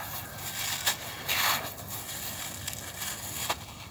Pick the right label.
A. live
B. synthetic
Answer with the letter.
A